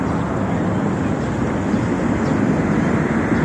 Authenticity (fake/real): real